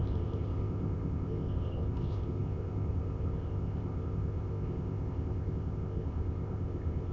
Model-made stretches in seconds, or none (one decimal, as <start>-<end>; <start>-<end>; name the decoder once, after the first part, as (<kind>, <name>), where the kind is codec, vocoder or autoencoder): 0.0-7.1 (codec, ZipCodec)